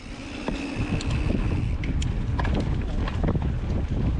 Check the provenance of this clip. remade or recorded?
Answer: recorded